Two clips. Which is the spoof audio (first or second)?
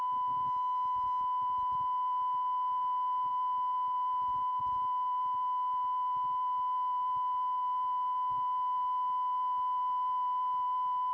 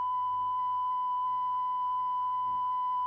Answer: second